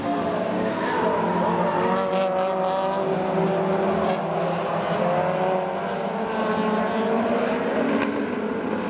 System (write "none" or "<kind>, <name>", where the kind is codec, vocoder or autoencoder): none